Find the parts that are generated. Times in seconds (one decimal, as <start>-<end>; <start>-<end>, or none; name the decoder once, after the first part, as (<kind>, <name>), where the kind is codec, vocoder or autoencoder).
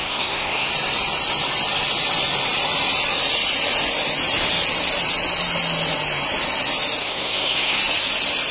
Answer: 0.0-0.7 (codec, SNAC); 7.0-7.8